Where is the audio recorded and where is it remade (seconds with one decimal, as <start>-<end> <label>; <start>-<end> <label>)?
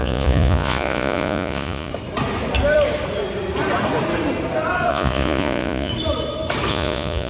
0.0-1.9 remade; 1.9-4.9 recorded; 4.9-5.9 remade; 5.9-6.7 recorded; 6.7-7.3 remade